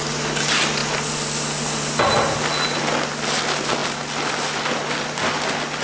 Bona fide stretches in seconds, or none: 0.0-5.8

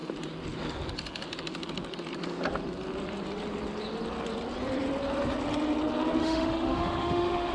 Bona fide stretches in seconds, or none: 0.0-6.2

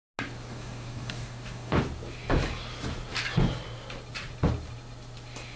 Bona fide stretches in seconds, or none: 0.0-0.5; 1.8-5.6

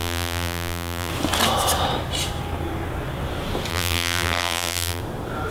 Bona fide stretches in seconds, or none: 1.1-3.7; 5.0-5.5

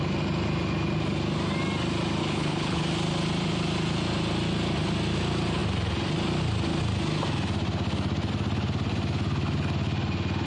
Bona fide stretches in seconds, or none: 0.0-2.2; 2.8-10.5